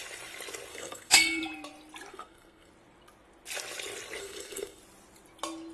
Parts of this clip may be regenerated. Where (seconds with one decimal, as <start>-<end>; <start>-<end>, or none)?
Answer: 0.7-1.4; 2.1-2.7; 4.2-4.8